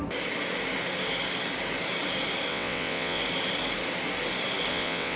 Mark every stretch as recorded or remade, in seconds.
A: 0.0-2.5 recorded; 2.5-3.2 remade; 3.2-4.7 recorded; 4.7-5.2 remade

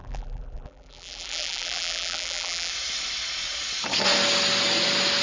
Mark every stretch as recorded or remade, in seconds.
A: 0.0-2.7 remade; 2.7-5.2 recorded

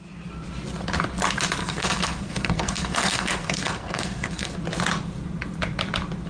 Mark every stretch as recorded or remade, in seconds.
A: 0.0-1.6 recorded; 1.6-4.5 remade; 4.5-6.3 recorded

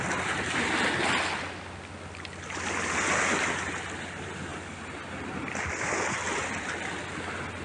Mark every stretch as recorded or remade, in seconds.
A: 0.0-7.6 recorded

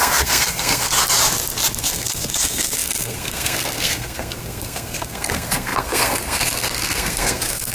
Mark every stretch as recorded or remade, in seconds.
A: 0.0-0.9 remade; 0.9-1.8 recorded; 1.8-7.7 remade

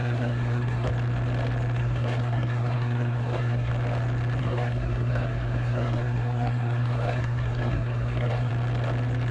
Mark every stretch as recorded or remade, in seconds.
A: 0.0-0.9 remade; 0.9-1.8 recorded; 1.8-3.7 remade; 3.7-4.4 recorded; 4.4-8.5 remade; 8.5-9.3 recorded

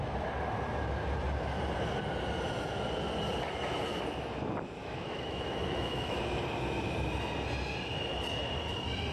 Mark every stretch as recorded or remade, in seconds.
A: 0.0-4.8 recorded; 4.8-6.2 remade; 6.2-9.1 recorded